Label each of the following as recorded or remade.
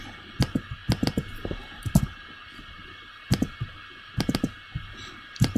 recorded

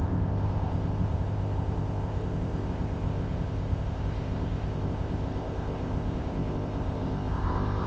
remade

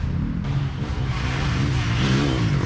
recorded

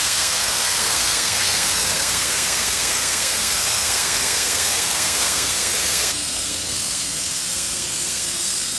remade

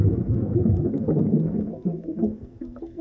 remade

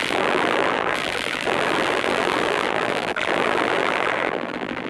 remade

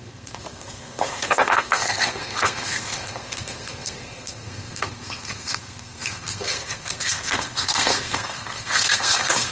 remade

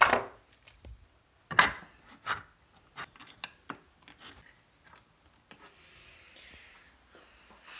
recorded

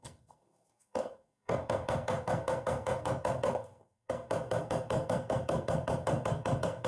remade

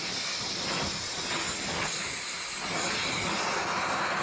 recorded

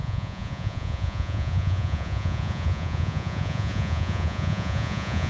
remade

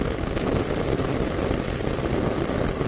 recorded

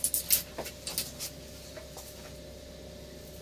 recorded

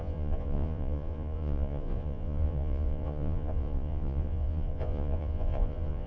remade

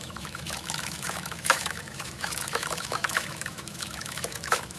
remade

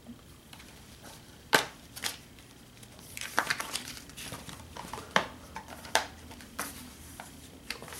remade